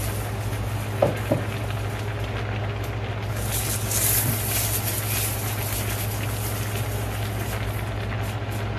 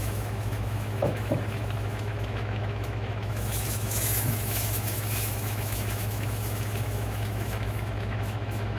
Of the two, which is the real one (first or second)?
first